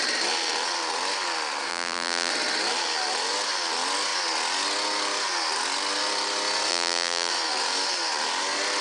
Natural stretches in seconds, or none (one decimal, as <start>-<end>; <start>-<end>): 0.0-1.7; 2.3-6.7; 7.3-8.8